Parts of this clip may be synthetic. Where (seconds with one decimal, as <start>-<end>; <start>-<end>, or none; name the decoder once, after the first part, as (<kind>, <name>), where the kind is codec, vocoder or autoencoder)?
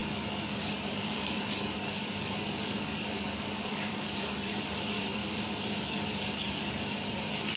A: 0.0-5.2 (codec, DAC); 5.8-7.6